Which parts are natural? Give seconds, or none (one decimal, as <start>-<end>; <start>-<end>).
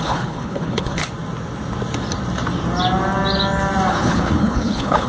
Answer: 1.0-3.9